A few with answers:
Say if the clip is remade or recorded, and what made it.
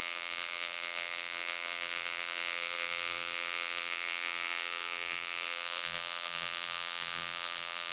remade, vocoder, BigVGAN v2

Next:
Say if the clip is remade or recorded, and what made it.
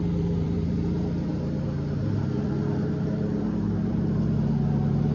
remade, vocoder, BigVGAN v2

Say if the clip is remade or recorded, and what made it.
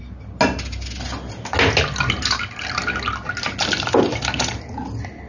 recorded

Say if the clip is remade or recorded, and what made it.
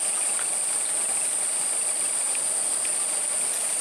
recorded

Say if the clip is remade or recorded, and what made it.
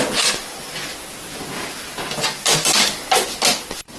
recorded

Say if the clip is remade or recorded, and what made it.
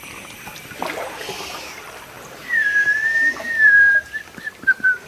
remade, vocoder, BigVGAN v2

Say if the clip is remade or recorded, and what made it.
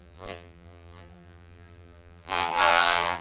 remade, vocoder, BigVGAN v2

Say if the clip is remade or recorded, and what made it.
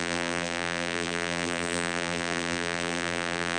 remade, vocoder, BigVGAN v2